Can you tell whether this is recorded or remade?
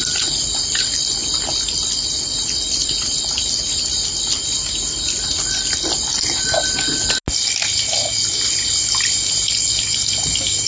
recorded